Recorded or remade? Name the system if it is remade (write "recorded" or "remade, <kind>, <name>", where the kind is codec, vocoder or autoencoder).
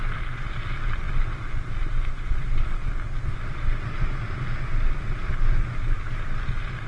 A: recorded